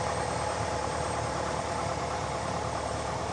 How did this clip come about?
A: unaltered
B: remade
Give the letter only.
B